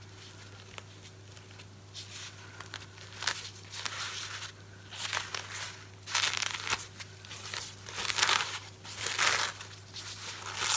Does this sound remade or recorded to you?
recorded